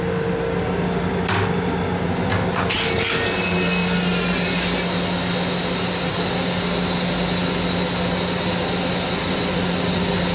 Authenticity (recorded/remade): recorded